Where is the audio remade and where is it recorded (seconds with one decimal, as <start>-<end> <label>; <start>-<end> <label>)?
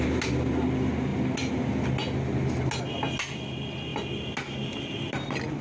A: 0.0-5.6 recorded